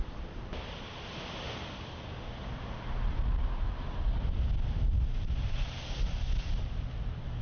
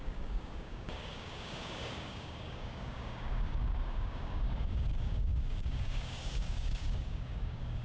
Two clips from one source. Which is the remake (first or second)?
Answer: second